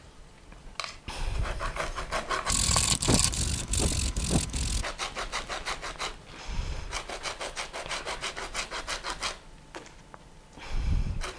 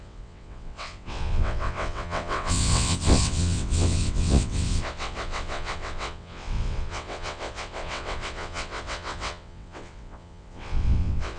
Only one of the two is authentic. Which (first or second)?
first